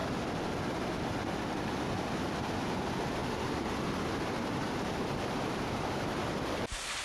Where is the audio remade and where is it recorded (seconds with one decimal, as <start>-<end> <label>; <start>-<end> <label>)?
0.0-7.0 recorded